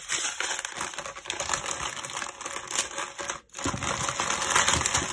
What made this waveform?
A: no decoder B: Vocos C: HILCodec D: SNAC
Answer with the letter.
A